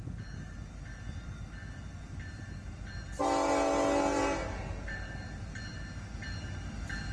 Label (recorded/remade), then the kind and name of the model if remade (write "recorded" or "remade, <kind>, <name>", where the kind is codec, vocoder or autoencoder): recorded